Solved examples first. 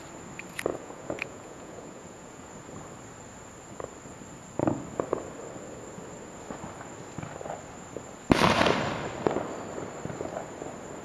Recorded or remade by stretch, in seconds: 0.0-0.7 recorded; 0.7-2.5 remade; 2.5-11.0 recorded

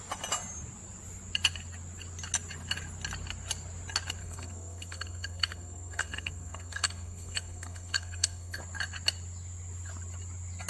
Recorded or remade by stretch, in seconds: 0.0-4.2 recorded; 4.2-8.6 remade; 8.6-10.7 recorded

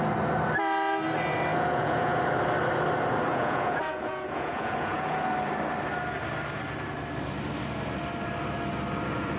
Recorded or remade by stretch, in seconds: 0.0-1.5 recorded; 1.5-2.2 remade; 2.2-3.3 recorded; 3.3-5.3 remade; 5.3-9.4 recorded

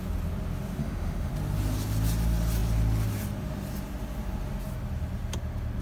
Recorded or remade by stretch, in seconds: 0.0-0.8 recorded; 0.8-1.3 remade; 1.3-5.8 recorded

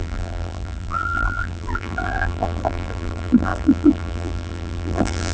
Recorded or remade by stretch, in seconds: 0.0-5.3 remade

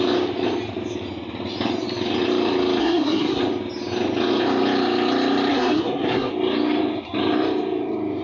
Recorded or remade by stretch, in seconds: 0.0-2.8 recorded; 2.8-3.4 remade; 3.4-5.5 recorded; 5.5-6.3 remade; 6.3-8.2 recorded

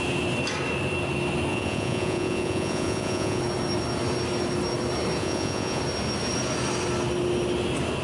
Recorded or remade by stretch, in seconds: 0.0-1.5 recorded; 1.5-3.4 remade; 3.4-5.2 recorded; 5.2-5.8 remade; 5.8-8.0 recorded